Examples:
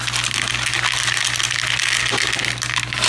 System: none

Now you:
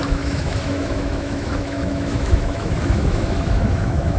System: autoencoder, DAC-VAE